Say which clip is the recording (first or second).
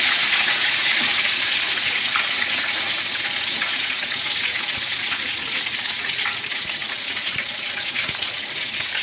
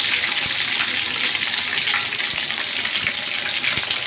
second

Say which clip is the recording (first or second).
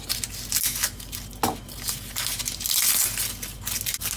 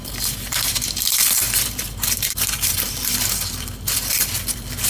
first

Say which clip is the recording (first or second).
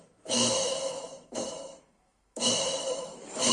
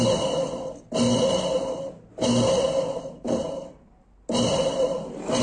second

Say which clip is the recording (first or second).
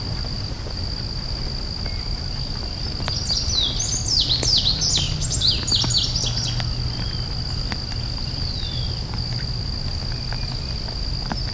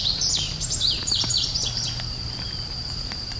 first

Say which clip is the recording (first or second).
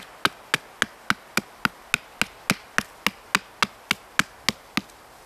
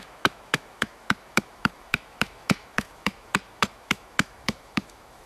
first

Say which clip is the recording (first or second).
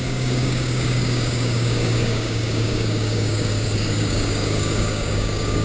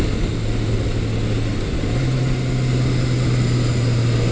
second